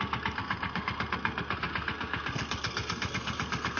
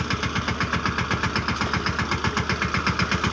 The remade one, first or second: first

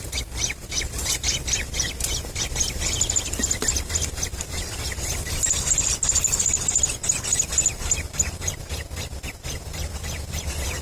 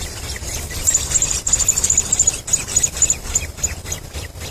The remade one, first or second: second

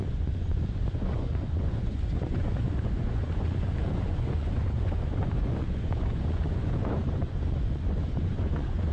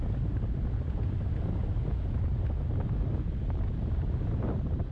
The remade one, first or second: first